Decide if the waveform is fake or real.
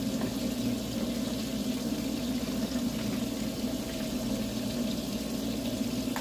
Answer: real